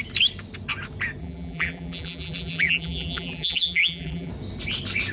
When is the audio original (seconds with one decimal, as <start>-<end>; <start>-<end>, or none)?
0.0-1.2; 4.3-5.1